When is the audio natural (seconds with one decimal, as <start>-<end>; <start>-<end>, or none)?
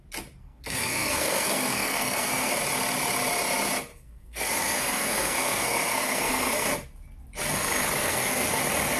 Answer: 0.0-0.4; 2.6-3.9; 6.7-8.0; 8.6-9.0